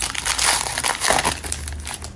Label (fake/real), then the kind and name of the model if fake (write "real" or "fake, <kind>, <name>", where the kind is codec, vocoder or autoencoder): real